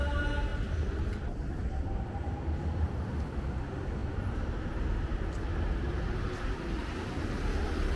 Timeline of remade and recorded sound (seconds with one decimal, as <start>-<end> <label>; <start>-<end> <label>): 0.0-8.0 recorded